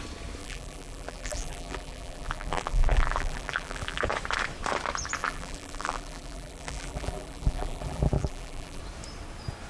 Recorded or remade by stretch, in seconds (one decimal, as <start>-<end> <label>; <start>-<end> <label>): 0.0-0.4 recorded; 0.4-4.0 remade; 4.0-5.2 recorded; 5.2-8.8 remade; 8.8-9.7 recorded